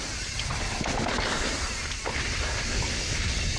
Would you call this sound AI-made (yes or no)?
no